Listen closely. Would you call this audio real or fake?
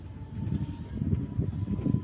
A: real